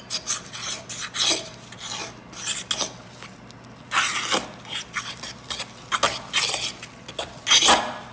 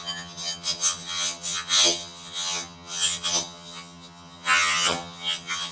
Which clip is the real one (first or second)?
first